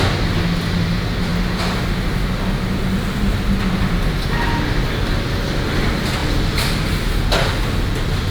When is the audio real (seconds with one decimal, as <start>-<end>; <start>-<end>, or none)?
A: 0.0-8.3